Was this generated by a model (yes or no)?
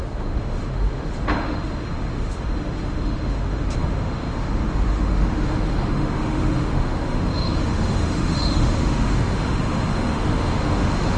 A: yes